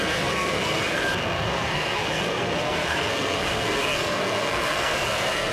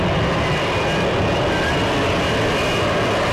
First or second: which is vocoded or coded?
first